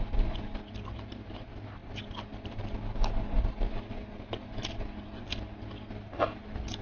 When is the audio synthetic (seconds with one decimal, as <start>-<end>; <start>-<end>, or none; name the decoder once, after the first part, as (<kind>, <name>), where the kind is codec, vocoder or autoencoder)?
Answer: none